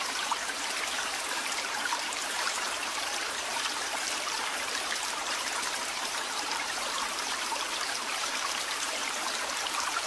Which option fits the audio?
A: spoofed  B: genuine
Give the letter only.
A